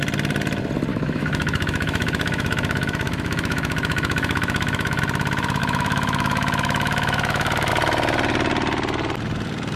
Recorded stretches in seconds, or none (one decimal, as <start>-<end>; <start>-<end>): 0.0-0.9; 5.0-5.6; 7.7-9.8